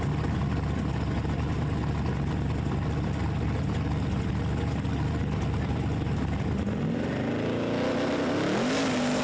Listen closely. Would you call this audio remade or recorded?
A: recorded